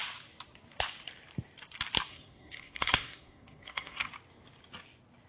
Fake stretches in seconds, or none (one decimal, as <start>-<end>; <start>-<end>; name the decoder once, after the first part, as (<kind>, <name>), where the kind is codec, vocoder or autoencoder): 2.1-4.1 (codec, SNAC)